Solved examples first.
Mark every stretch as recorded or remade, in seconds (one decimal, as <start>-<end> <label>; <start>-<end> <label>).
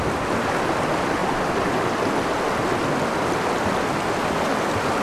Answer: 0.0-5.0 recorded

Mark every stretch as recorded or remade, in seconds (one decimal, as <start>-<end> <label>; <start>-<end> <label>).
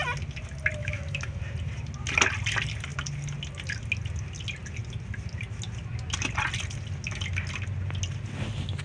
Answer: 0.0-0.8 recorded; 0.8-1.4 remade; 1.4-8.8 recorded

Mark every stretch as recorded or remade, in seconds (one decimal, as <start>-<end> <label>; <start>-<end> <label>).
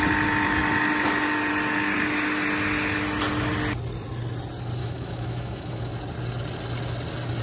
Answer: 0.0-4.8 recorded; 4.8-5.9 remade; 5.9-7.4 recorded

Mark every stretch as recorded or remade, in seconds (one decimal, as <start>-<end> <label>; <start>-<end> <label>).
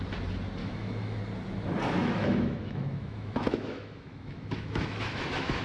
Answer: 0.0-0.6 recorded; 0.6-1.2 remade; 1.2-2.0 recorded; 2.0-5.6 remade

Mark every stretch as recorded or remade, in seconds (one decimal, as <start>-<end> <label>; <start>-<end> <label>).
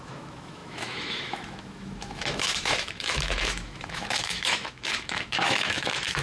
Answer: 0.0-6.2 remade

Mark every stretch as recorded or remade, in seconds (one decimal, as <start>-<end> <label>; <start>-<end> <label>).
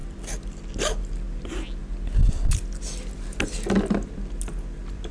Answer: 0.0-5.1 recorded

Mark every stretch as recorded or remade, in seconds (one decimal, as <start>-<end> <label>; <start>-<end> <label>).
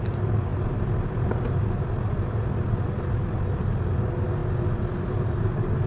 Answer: 0.0-5.9 recorded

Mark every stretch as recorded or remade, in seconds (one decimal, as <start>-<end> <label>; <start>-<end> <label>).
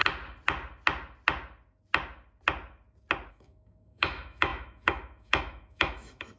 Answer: 0.0-3.3 recorded; 3.3-6.4 remade